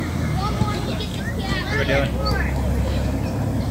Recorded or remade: recorded